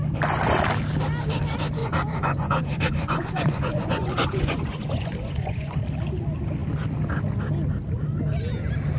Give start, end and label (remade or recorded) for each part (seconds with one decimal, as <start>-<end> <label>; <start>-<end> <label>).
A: 0.0-1.8 recorded; 1.8-5.8 remade; 5.8-9.0 recorded